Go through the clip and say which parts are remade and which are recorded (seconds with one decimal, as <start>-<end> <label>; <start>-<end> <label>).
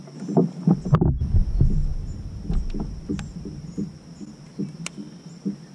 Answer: 0.0-5.7 recorded